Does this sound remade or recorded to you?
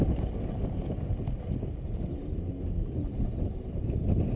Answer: recorded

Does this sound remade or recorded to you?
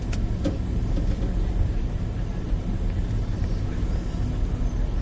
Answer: recorded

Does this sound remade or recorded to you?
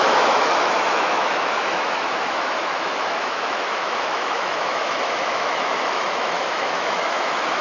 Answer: remade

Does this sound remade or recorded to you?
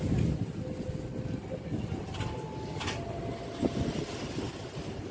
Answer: recorded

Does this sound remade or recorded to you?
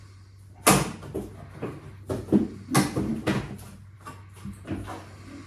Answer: recorded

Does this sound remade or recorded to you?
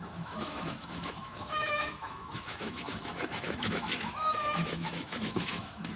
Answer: remade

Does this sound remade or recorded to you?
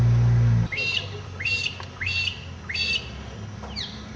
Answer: recorded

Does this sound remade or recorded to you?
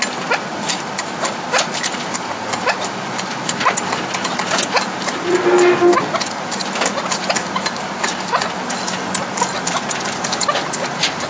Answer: recorded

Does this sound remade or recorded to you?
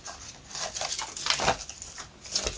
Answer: recorded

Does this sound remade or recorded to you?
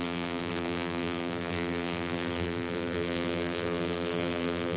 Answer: remade